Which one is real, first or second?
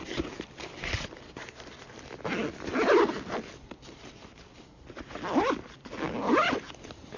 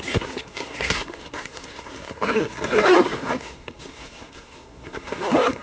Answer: first